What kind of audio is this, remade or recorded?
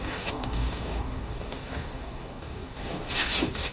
remade